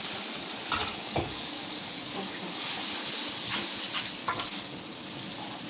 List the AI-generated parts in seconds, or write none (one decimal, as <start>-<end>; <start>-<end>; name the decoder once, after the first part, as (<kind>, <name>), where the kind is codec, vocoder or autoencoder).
0.8-2.9 (codec, DAC); 4.2-5.2